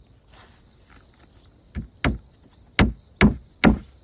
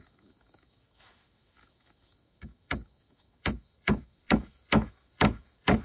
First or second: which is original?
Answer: first